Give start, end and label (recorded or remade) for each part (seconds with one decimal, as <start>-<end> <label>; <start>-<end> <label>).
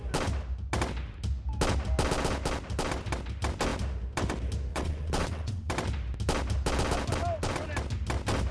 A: 0.0-4.7 recorded; 4.7-5.7 remade; 5.7-8.5 recorded